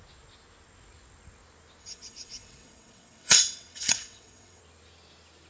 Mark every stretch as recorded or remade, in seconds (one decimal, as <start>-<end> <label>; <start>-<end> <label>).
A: 0.0-1.8 recorded; 1.8-4.6 remade; 4.6-5.5 recorded